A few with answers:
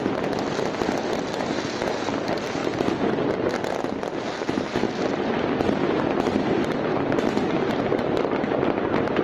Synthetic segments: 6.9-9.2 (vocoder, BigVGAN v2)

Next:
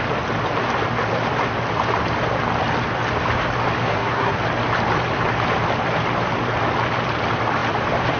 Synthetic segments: 3.8-4.4 (codec, SNAC)

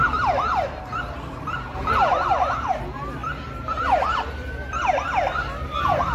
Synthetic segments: none

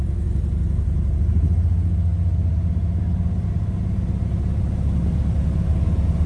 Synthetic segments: none

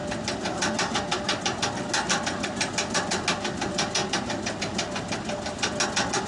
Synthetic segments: none

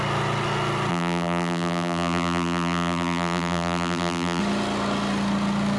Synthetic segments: 0.9-4.4 (vocoder, BigVGAN v2)